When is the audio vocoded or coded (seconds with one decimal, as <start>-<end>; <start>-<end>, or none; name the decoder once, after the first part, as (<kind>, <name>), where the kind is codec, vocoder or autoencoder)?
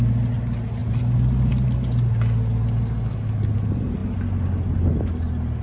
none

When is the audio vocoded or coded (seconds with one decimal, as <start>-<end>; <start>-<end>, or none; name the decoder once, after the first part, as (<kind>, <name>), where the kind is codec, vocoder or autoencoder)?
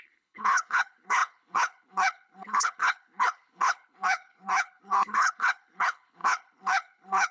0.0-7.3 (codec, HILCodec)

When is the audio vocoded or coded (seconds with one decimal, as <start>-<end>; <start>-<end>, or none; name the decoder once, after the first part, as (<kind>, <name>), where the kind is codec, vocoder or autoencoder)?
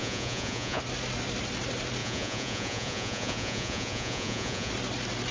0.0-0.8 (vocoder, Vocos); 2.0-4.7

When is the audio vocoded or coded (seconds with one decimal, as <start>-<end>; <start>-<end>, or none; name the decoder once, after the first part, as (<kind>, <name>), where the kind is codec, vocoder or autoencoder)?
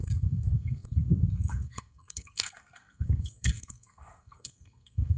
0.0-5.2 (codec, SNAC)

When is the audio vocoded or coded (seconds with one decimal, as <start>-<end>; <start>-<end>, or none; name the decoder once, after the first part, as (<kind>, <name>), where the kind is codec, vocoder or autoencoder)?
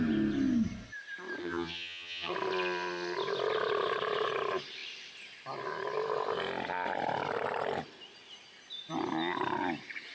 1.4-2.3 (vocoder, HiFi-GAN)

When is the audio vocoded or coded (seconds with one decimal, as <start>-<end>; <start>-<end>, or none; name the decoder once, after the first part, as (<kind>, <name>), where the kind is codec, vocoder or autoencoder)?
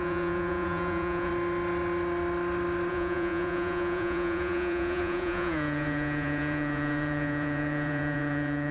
0.0-1.3 (vocoder, Vocos); 2.9-8.7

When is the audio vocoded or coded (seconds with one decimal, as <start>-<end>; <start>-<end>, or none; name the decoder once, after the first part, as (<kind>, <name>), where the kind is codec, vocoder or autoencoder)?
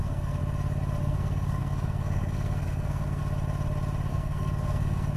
0.0-0.4 (codec, SNAC); 1.0-3.2; 4.1-5.2